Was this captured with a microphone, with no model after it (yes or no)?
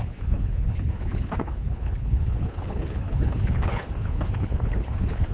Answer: no